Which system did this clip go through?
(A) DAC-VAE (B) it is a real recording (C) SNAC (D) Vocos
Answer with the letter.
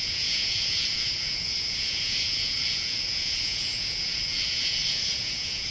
D